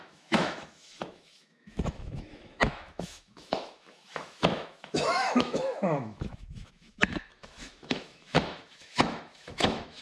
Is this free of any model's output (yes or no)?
no